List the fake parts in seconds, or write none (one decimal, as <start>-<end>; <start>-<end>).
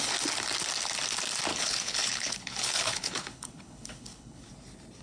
1.5-4.5